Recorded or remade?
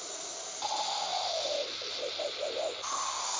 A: recorded